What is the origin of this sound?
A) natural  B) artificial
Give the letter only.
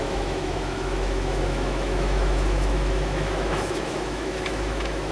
B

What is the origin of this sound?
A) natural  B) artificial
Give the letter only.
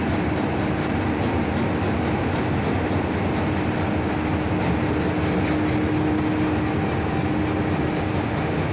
A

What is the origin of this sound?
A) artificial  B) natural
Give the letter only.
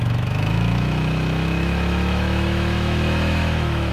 A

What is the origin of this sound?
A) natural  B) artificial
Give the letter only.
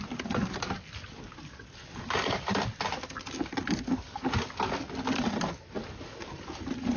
A